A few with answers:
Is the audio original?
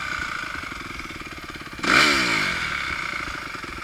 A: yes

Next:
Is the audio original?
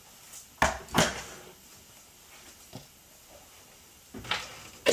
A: yes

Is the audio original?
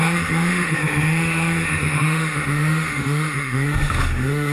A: no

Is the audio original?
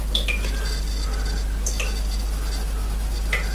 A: yes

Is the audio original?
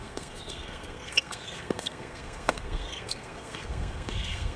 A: no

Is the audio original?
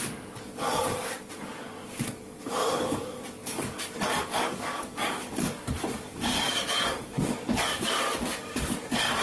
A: no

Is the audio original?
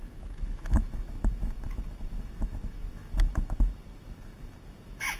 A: no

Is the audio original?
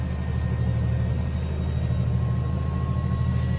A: yes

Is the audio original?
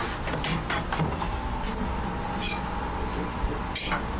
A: yes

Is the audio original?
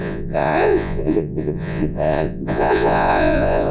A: no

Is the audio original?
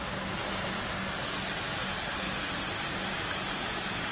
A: yes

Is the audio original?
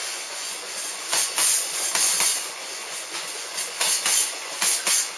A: no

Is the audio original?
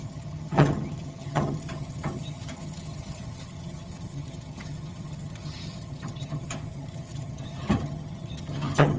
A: no